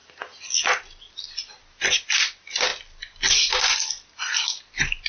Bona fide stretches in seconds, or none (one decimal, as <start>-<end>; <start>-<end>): 0.0-5.1